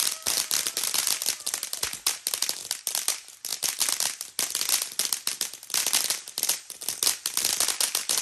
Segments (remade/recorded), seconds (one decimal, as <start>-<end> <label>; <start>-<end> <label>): 0.0-0.7 remade; 0.7-8.2 recorded